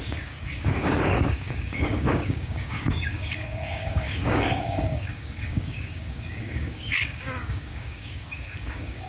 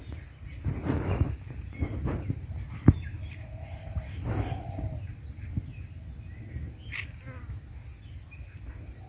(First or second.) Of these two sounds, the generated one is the first